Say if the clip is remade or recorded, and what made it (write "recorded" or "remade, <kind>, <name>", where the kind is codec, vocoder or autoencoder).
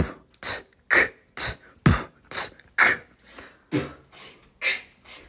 recorded